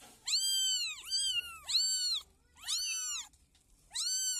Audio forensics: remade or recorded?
recorded